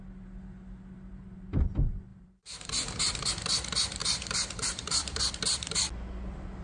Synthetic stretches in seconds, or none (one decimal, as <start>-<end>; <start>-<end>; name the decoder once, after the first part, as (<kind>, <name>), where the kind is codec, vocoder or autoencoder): 2.1-3.3 (vocoder, BigVGAN v2); 4.0-5.3